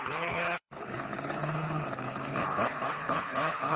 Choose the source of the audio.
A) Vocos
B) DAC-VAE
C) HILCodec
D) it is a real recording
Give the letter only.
C